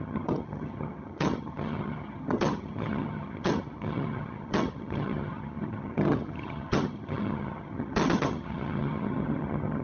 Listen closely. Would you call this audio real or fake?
fake